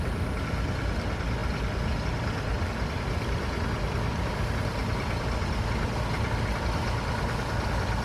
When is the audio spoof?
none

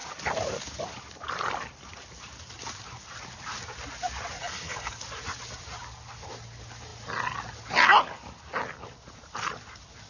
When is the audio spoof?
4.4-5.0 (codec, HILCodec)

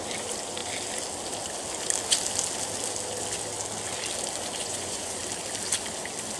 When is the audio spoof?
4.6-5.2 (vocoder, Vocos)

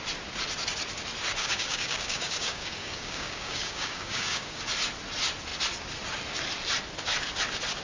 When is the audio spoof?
1.4-4.6 (codec, DAC)

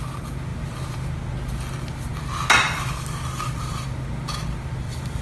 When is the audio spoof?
none

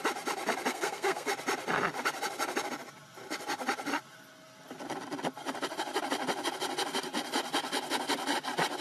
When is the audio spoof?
0.7-1.3 (codec, SNAC)